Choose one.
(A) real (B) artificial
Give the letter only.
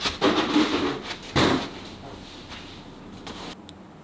A